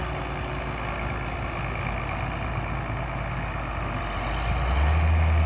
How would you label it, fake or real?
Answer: real